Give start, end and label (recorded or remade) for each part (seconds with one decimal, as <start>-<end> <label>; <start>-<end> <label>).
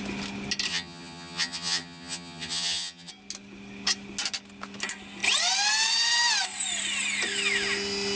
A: 0.0-0.7 recorded; 0.7-3.1 remade; 3.1-8.2 recorded